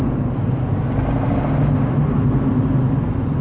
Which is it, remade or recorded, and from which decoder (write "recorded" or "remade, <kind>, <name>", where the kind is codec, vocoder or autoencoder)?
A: recorded